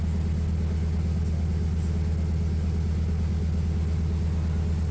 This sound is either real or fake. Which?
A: real